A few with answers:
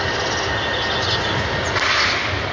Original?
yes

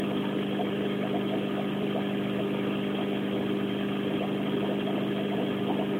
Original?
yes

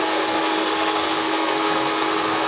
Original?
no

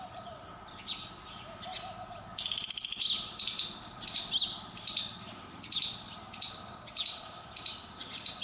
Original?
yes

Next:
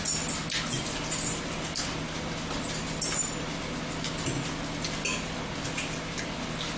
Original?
yes